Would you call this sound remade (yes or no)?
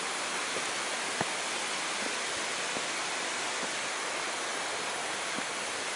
no